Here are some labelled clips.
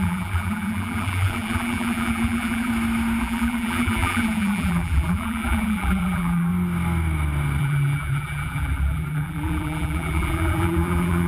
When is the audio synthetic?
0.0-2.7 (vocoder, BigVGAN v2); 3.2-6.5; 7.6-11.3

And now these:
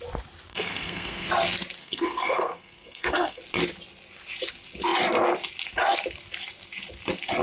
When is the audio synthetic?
0.5-1.3 (codec, SNAC); 1.8-3.4

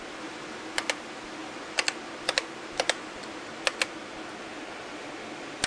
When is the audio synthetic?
none

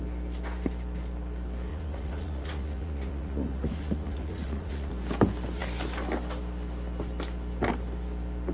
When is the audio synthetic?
1.7-4.9 (vocoder, Vocos)

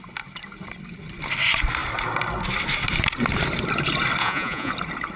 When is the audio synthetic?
4.2-4.7 (vocoder, Vocos)

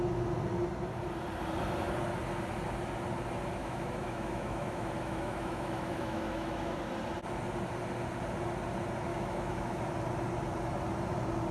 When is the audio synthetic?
3.6-6.8 (autoencoder, DAC-VAE); 9.1-9.8